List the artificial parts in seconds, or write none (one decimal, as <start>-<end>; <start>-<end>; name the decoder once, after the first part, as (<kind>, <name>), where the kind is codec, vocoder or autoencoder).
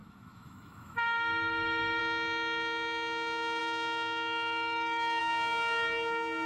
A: 0.0-2.0 (autoencoder, DAC-VAE); 3.6-5.2